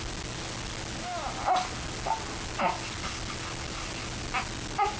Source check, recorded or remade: recorded